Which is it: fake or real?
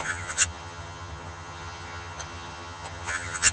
fake